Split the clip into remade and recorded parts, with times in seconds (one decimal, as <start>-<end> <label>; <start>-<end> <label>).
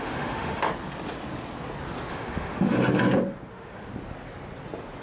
0.0-0.7 remade; 0.7-2.1 recorded; 2.1-2.7 remade; 2.7-3.5 recorded; 3.5-3.9 remade; 3.9-5.0 recorded